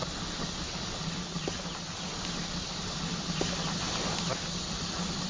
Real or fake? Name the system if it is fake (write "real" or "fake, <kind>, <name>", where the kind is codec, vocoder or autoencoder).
real